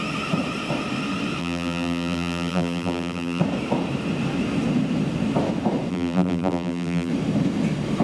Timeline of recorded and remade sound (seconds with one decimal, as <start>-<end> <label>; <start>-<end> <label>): 0.0-1.4 recorded; 1.4-3.4 remade; 3.4-5.9 recorded; 5.9-7.1 remade; 7.1-8.0 recorded